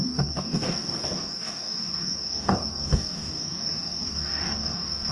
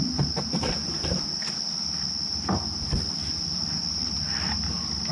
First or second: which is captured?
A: second